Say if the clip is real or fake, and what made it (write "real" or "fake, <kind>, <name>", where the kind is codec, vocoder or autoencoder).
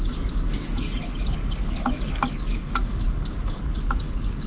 fake, codec, DAC